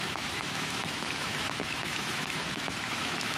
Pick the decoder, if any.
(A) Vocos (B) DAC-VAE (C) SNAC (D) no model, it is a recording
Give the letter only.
B